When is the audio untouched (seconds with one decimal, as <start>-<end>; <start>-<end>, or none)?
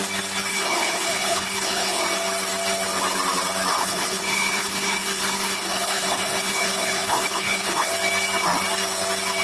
0.0-0.5; 2.0-3.7; 7.9-9.4